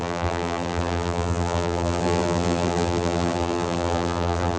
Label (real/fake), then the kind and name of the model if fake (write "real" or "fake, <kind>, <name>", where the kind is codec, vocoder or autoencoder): fake, vocoder, BigVGAN v2